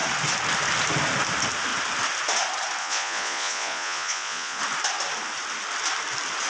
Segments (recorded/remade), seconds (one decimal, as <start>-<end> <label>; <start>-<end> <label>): 0.0-2.8 recorded; 2.8-4.6 remade; 4.6-6.5 recorded